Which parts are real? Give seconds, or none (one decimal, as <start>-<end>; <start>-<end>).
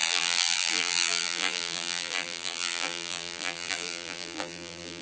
none